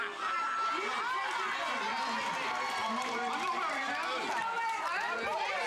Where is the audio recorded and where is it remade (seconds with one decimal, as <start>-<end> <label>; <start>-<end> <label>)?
0.0-2.8 recorded; 2.8-4.2 remade; 4.2-5.7 recorded